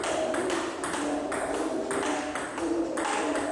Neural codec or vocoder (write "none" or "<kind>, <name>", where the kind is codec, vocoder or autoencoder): none